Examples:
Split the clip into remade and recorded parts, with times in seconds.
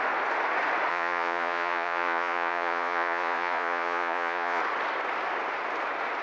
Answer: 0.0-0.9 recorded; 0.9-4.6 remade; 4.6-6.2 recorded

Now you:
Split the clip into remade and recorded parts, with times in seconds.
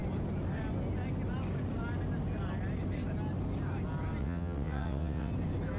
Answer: 0.0-4.2 recorded; 4.2-5.3 remade; 5.3-5.8 recorded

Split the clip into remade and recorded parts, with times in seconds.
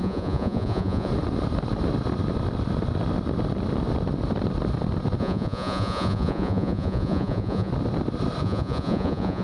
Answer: 0.0-1.1 remade; 1.1-5.2 recorded; 5.2-7.7 remade; 7.7-8.4 recorded; 8.4-9.4 remade